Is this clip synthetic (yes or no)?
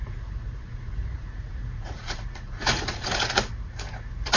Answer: yes